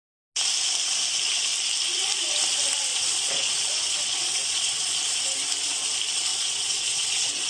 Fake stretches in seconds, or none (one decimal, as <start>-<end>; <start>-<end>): 2.9-5.0; 6.3-7.5